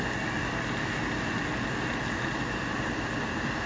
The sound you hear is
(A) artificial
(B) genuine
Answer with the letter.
B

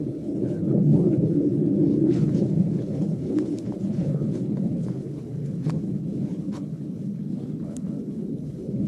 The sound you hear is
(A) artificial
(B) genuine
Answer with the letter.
A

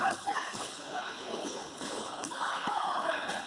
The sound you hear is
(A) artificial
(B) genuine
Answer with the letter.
A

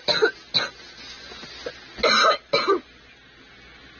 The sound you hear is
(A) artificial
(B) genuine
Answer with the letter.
B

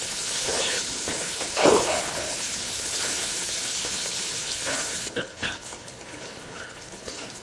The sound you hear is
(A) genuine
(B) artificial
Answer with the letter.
B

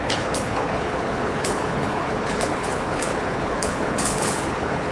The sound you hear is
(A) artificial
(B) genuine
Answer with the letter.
A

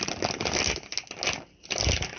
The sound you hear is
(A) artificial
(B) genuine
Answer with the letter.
B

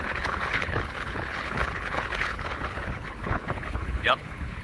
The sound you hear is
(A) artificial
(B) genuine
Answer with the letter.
A